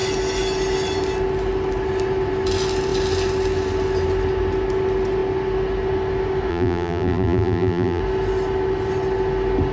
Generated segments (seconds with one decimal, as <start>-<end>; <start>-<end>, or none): 6.5-8.0